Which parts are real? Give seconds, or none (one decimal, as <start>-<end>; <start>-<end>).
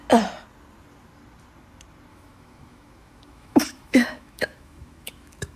0.0-2.1